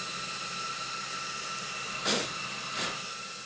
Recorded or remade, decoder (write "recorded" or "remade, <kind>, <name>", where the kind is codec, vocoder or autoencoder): recorded